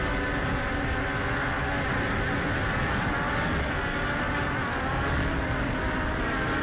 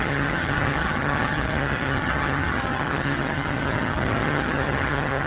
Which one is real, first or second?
first